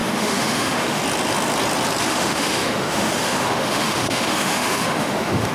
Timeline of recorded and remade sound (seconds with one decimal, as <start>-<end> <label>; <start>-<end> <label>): 0.0-1.0 remade; 1.0-2.1 recorded; 2.1-5.5 remade